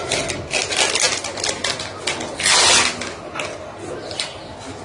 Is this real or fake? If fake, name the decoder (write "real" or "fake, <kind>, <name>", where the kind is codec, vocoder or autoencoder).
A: real